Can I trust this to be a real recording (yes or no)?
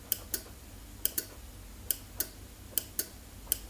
yes